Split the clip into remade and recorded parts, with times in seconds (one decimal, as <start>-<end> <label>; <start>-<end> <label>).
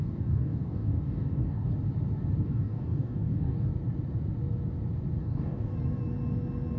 0.0-1.7 remade; 1.7-2.4 recorded; 2.4-3.7 remade; 3.7-5.2 recorded; 5.2-5.7 remade; 5.7-6.8 recorded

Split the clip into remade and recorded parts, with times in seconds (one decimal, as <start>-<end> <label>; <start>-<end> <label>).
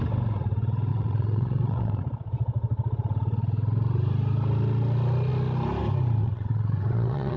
0.0-0.9 recorded; 0.9-2.0 remade; 2.0-6.2 recorded; 6.2-7.4 remade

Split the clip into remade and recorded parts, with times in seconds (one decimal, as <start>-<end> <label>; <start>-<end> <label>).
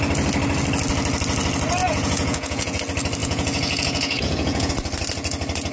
0.0-1.8 recorded; 1.8-2.8 remade; 2.8-3.2 recorded; 3.2-4.7 remade; 4.7-5.7 recorded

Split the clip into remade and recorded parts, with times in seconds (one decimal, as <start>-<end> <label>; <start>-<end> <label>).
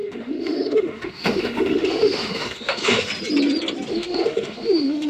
0.0-3.1 remade; 3.1-3.9 recorded; 3.9-5.1 remade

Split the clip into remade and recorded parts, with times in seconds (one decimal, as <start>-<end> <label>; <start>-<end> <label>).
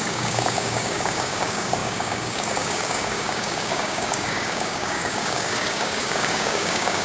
0.0-7.0 remade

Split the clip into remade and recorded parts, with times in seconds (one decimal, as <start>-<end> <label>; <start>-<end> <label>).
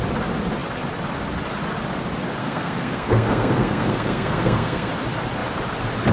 0.0-2.4 recorded; 2.4-4.9 remade; 4.9-6.1 recorded